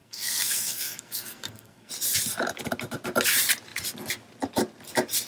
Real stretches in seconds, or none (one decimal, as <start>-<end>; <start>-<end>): 1.9-5.3